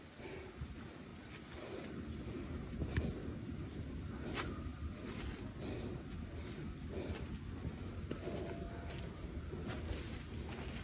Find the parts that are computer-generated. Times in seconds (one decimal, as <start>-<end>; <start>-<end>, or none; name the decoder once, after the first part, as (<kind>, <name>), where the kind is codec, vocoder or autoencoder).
none